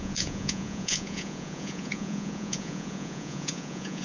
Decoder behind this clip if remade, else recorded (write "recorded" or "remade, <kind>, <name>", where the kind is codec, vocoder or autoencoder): remade, vocoder, Vocos